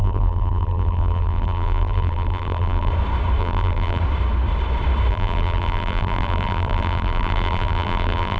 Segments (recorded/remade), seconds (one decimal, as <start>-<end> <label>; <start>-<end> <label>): 0.0-2.9 remade; 2.9-3.4 recorded; 3.4-4.0 remade; 4.0-5.1 recorded; 5.1-8.4 remade